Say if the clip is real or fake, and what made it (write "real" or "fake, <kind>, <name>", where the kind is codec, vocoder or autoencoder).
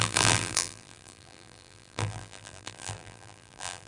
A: fake, vocoder, BigVGAN v2